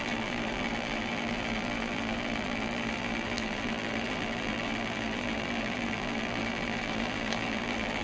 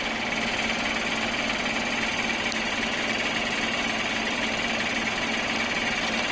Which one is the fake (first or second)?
first